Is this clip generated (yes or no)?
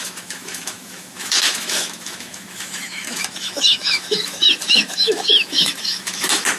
yes